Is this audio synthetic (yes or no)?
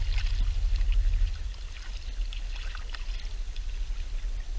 no